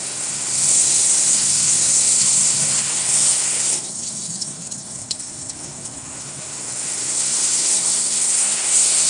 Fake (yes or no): yes